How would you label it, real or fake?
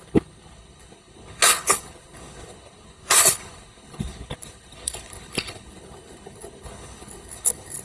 fake